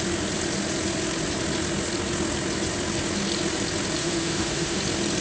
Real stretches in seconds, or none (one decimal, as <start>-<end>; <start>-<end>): 0.0-4.0; 4.8-5.2